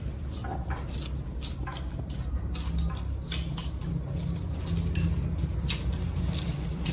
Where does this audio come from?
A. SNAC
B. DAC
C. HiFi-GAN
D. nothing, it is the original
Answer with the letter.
D